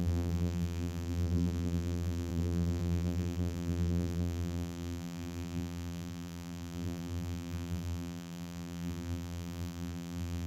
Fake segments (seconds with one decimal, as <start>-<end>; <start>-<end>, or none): 0.0-10.5